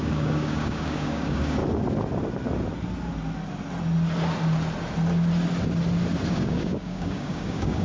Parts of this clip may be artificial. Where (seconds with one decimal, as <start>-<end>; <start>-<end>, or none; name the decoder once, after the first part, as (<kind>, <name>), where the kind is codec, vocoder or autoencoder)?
0.0-1.6 (codec, DAC); 6.3-7.8